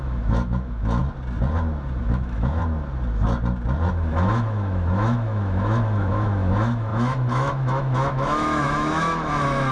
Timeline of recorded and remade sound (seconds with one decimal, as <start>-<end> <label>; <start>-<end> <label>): 0.0-1.0 remade; 1.0-2.0 recorded; 2.0-2.6 remade; 2.6-3.9 recorded; 3.9-9.7 remade